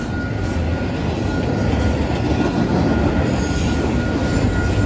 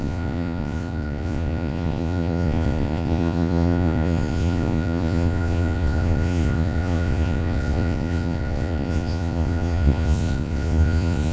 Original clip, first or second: first